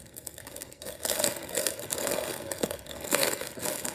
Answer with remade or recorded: remade